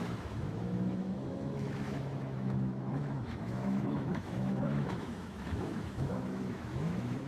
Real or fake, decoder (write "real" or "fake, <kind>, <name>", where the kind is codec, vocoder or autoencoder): fake, autoencoder, DAC-VAE